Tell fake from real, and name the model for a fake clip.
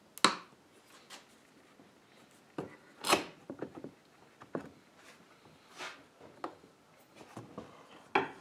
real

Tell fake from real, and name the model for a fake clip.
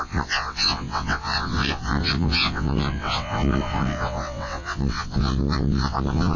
fake, vocoder, WaveNeXt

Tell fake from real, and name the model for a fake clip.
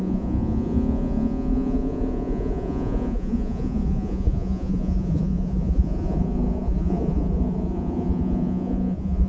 fake, vocoder, Vocos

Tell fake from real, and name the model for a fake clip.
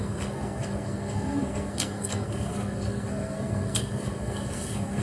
fake, codec, SNAC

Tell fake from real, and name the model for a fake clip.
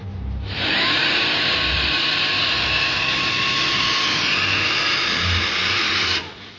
real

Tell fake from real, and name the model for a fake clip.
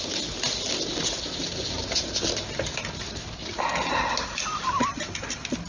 real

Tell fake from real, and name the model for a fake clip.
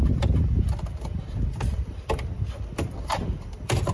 fake, vocoder, BigVGAN v2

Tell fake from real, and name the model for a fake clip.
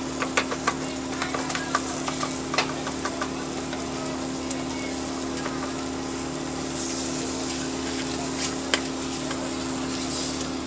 real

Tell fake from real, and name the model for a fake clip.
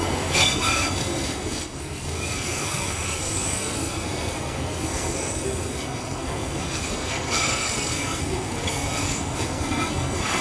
fake, codec, SNAC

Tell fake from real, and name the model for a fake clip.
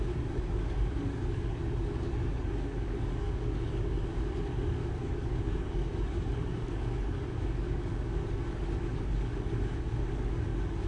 fake, codec, DAC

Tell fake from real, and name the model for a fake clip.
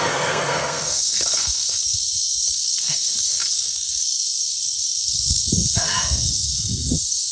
fake, codec, SNAC